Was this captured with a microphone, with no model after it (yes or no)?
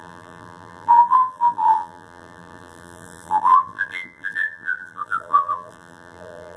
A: no